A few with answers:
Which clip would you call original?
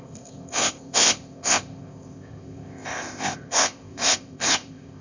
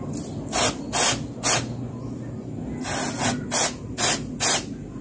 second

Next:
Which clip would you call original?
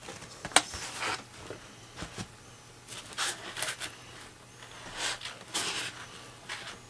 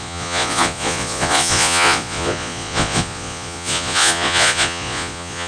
first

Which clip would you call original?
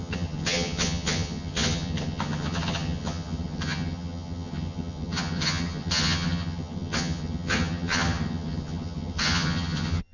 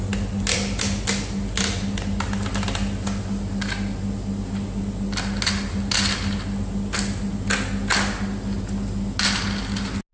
second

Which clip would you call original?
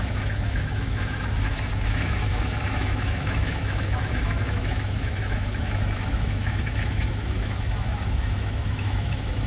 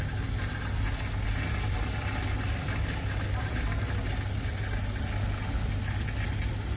second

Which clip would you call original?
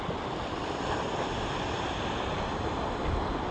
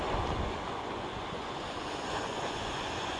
first